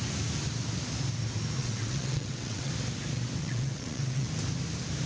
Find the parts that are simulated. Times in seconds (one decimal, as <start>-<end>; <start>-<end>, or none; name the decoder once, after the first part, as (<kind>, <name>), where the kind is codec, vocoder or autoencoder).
1.6-2.7 (vocoder, WaveNeXt); 3.4-4.3